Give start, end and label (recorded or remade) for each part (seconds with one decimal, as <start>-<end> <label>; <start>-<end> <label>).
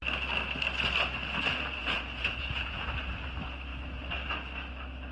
0.0-1.8 recorded; 1.8-2.9 remade; 2.9-5.1 recorded